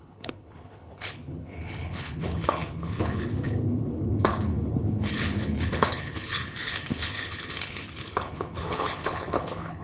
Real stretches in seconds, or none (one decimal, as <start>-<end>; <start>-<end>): none